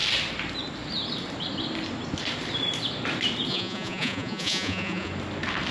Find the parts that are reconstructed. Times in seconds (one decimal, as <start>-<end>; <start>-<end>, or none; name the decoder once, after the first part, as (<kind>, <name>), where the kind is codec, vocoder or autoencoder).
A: 3.5-5.1 (vocoder, Vocos)